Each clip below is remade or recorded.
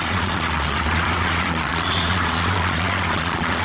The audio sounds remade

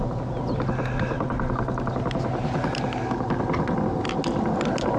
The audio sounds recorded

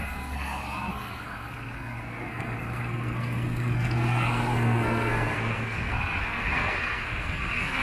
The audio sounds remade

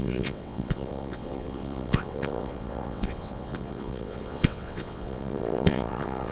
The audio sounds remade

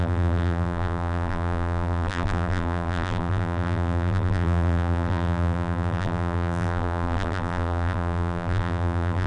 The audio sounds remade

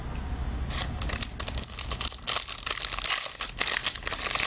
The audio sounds recorded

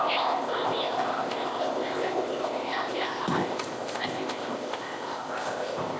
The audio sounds remade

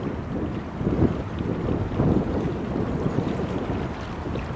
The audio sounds recorded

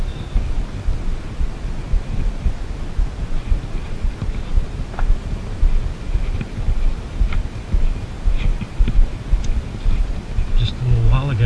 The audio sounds recorded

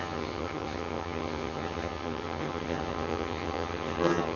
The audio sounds remade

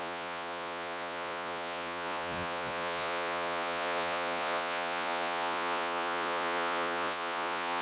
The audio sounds remade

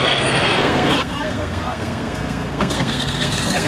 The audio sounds remade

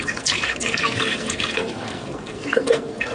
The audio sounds remade